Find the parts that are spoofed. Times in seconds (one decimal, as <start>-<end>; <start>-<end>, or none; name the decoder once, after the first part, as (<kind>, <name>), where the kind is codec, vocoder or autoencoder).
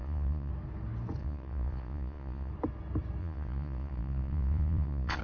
0.0-0.5 (vocoder, Vocos); 1.2-2.5; 3.2-5.2